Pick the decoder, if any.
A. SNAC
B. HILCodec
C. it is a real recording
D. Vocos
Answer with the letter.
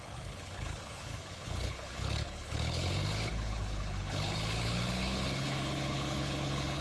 B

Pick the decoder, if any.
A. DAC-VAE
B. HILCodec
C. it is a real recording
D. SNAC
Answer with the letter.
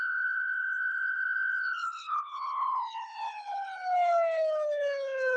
B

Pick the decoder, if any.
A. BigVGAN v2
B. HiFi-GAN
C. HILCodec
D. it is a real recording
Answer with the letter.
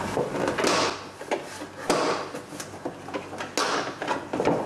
D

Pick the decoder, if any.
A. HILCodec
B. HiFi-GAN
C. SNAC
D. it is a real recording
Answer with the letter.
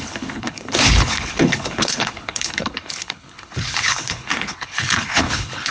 A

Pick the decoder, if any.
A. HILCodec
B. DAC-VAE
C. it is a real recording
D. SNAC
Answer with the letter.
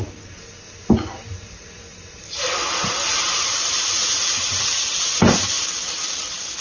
C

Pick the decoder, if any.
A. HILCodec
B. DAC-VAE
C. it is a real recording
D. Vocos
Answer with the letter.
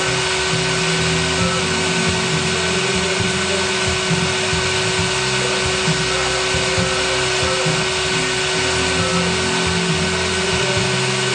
C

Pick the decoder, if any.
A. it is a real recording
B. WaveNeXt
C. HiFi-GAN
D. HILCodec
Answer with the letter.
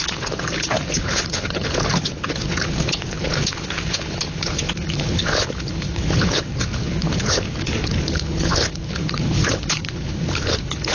D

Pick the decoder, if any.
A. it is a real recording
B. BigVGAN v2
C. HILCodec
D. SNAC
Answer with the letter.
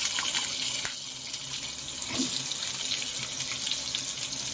A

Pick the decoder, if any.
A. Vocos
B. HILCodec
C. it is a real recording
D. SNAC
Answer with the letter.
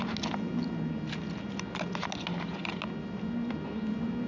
C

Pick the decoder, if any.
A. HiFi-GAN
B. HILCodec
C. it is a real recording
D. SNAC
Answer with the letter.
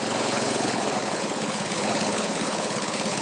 B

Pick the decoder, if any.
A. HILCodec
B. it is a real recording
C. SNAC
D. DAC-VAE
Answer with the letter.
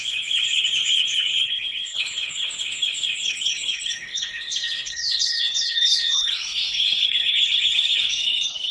A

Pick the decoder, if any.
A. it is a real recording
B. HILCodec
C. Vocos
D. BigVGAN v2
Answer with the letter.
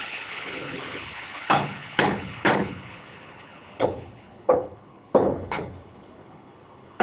B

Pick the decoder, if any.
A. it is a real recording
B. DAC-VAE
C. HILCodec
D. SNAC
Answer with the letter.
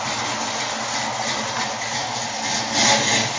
A